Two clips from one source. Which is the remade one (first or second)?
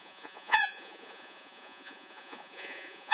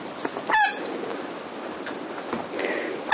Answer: first